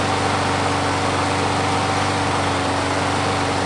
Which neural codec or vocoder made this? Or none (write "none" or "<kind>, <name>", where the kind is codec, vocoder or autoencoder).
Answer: none